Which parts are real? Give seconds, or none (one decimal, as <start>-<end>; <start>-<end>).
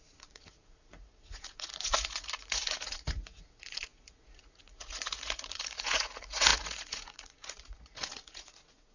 none